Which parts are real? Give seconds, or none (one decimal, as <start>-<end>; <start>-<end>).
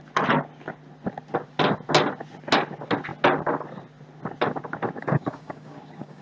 0.0-5.0